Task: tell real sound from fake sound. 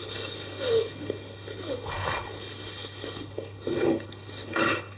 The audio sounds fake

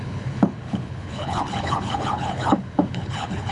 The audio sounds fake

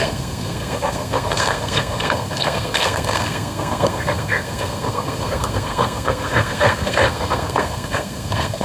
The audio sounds fake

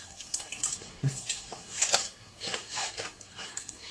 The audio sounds fake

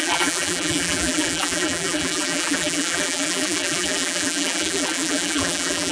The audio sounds fake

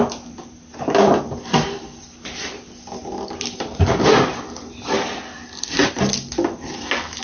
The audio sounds real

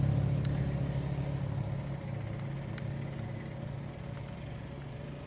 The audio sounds real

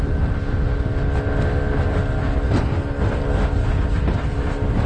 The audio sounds real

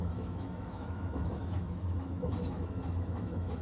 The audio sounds fake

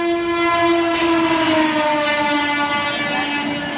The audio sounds real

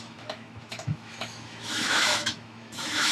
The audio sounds fake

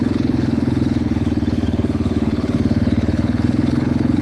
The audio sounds fake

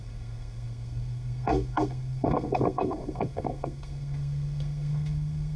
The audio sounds fake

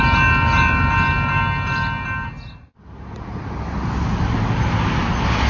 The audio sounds real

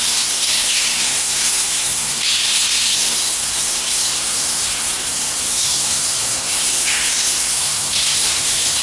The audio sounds fake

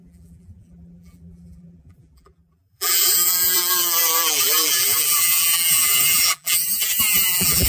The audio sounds fake